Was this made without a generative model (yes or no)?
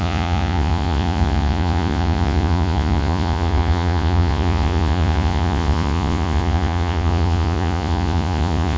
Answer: no